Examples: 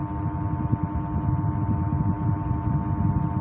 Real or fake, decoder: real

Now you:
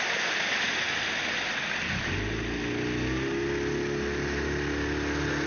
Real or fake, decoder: real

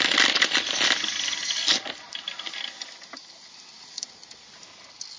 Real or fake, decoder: real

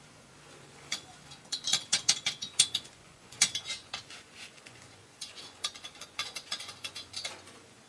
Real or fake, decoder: fake, vocoder, Vocos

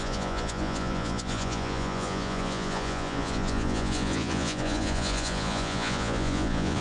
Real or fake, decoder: fake, vocoder, Vocos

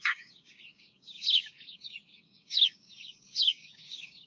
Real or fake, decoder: fake, codec, DAC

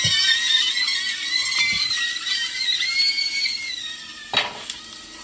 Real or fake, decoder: real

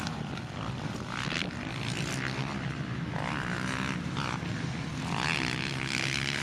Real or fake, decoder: real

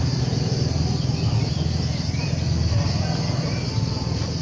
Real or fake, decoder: real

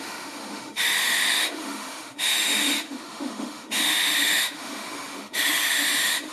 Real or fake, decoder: fake, autoencoder, DAC-VAE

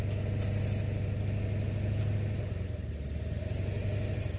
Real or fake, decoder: real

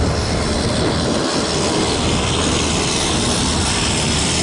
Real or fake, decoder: real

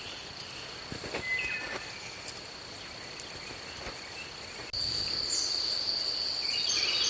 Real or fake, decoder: real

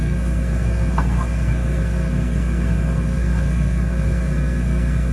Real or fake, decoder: fake, codec, SNAC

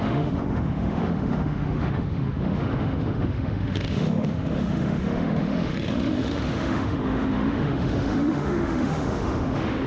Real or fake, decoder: fake, autoencoder, DAC-VAE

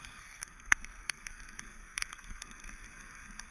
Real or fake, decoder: fake, codec, SNAC